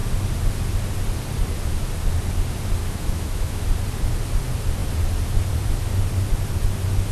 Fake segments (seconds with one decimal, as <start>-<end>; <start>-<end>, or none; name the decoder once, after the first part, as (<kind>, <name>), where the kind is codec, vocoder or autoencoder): 2.8-3.6 (autoencoder, DAC-VAE)